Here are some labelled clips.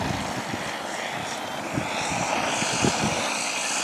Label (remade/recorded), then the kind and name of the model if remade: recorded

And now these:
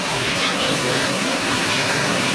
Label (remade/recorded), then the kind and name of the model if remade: remade, codec, SNAC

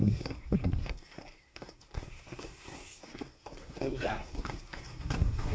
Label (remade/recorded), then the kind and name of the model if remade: remade, codec, SNAC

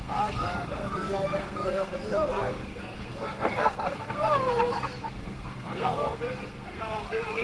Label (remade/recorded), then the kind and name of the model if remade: remade, codec, SNAC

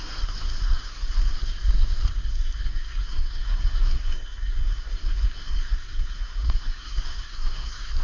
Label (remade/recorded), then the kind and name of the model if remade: remade, codec, SNAC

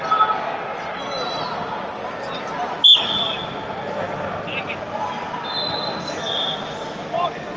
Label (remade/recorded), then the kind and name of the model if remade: recorded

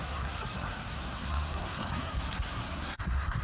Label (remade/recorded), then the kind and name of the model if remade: remade, codec, SNAC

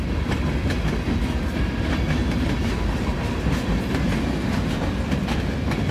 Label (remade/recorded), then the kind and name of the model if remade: recorded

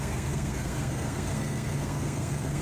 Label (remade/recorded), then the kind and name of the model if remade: remade, codec, SNAC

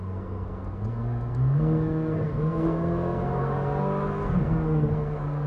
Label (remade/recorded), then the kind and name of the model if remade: remade, codec, SNAC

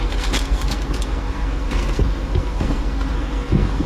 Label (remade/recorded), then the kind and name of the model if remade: remade, codec, SNAC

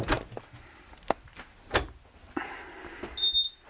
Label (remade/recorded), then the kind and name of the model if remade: recorded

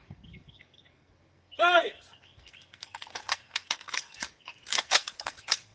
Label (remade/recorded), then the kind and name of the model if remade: remade, codec, SNAC